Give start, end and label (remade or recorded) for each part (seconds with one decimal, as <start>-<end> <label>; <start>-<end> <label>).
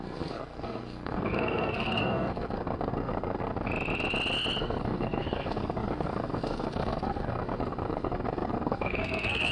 0.0-3.5 remade; 3.5-4.6 recorded; 4.6-9.5 remade